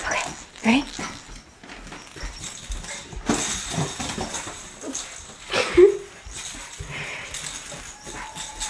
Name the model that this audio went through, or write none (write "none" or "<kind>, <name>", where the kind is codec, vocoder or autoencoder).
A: none